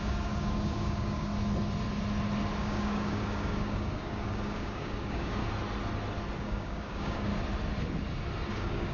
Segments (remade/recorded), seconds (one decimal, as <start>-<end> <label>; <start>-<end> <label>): 0.0-1.3 remade; 1.3-2.6 recorded; 2.6-5.4 remade; 5.4-6.4 recorded; 6.4-7.3 remade; 7.3-8.5 recorded; 8.5-8.9 remade